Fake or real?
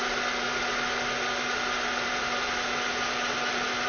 fake